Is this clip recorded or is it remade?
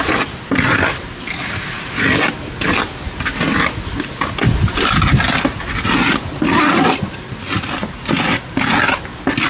recorded